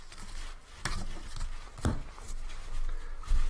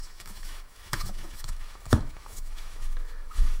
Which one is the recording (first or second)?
first